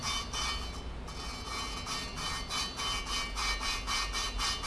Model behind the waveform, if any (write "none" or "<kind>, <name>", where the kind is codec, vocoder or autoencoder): none